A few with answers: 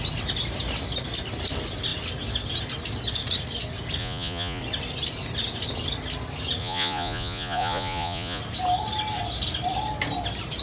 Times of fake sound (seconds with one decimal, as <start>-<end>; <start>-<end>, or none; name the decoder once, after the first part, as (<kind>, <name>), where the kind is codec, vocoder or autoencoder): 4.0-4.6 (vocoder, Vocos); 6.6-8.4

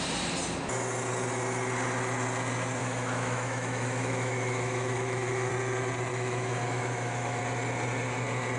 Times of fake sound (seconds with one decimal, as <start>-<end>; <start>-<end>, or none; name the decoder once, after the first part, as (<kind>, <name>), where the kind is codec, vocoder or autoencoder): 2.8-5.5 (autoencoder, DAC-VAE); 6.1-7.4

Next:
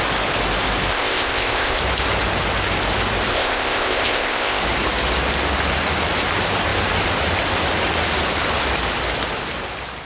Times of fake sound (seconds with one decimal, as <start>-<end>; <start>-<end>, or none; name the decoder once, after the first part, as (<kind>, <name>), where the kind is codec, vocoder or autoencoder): 0.9-1.8 (codec, ZipCodec); 3.3-4.6

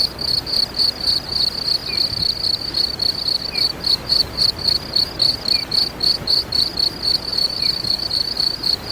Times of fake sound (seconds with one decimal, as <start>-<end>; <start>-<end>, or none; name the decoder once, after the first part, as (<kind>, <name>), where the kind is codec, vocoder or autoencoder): 7.3-8.9 (vocoder, BigVGAN v2)

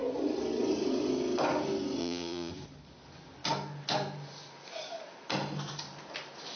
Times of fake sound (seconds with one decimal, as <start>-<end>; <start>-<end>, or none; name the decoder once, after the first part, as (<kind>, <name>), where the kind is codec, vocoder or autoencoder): 2.0-2.5 (vocoder, Vocos)